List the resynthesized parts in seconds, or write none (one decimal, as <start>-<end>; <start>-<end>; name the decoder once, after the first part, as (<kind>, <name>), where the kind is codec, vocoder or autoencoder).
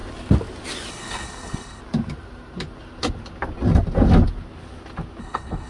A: 0.9-1.8 (codec, HILCodec); 5.2-5.7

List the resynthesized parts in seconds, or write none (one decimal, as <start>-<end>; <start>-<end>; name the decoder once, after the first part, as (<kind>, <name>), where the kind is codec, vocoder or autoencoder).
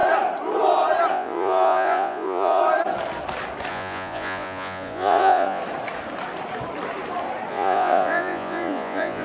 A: 1.1-2.6 (vocoder, Vocos); 3.7-5.6; 7.5-9.2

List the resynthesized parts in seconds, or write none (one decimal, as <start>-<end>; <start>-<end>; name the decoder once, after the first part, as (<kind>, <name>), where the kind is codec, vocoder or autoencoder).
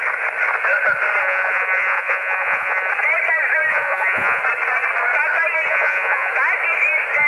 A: 1.2-2.9 (vocoder, Vocos); 3.7-4.4; 5.7-6.3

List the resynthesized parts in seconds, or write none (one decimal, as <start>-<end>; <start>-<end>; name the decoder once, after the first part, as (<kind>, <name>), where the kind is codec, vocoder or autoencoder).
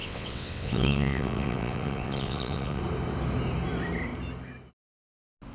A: 0.0-2.8 (vocoder, WaveNeXt)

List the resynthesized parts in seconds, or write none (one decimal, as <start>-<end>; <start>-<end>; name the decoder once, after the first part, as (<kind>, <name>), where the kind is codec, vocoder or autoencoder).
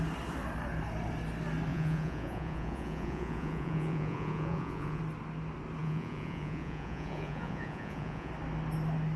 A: 1.7-5.0 (vocoder, Vocos); 5.8-8.3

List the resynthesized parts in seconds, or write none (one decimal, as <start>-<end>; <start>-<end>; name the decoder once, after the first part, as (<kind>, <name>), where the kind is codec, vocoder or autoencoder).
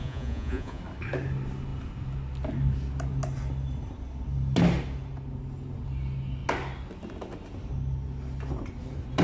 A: 0.0-0.8 (vocoder, Vocos)